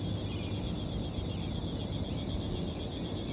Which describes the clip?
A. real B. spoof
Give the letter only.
A